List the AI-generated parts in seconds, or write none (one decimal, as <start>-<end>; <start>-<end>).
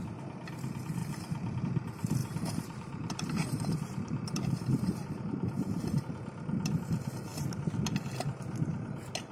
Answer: 1.0-1.6; 2.2-6.0